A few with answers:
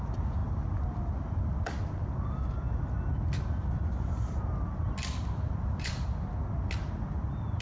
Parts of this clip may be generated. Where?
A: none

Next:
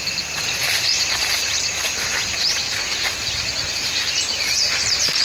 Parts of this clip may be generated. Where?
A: 0.0-5.2 (vocoder, BigVGAN v2)